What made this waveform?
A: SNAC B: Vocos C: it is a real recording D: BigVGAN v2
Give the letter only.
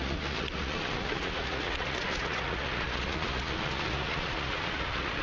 B